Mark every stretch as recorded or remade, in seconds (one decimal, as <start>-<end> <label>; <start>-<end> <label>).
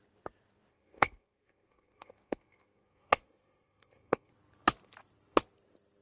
0.0-0.7 recorded; 0.7-4.3 remade; 4.3-6.0 recorded